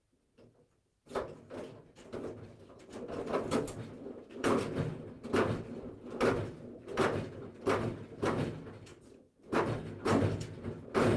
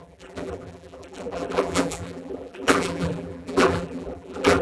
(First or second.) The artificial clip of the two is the second